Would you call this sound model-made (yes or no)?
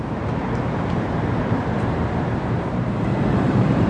yes